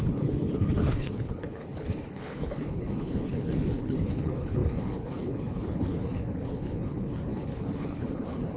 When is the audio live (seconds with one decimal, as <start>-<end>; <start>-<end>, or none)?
none